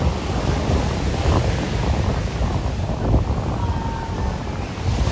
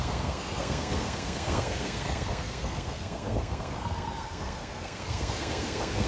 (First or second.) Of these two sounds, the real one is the first